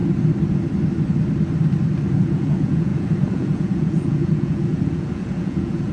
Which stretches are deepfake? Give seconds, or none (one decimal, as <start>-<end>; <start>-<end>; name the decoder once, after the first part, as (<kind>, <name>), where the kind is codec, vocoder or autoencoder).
2.1-5.9 (vocoder, Vocos)